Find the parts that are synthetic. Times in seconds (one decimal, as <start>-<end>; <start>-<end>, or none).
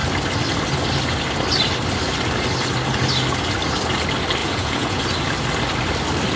4.4-5.0